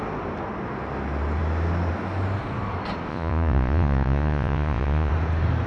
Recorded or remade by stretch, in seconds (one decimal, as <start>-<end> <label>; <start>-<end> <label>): 0.0-3.1 recorded; 3.1-5.1 remade; 5.1-5.7 recorded